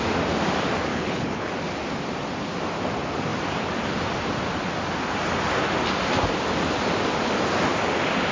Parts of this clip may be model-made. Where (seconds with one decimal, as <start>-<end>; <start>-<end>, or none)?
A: 0.9-1.5